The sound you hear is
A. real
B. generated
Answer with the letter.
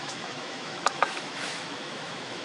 B